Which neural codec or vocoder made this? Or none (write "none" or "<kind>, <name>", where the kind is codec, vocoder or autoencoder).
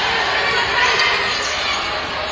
none